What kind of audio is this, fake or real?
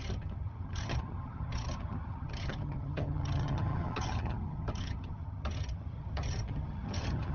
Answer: fake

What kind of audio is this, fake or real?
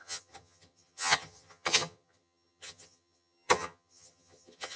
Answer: fake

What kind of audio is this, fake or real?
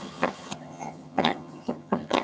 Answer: fake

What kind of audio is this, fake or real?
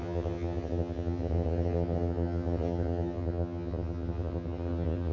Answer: fake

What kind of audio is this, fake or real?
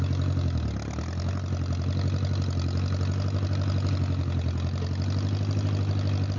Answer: real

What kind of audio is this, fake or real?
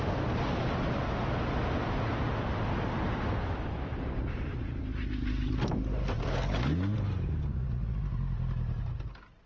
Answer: real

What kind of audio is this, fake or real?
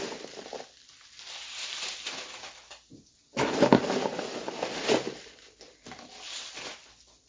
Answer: real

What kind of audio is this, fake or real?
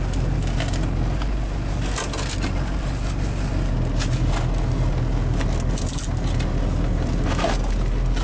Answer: real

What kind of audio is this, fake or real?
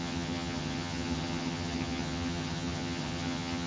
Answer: fake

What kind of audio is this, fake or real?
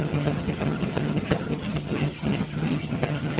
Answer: fake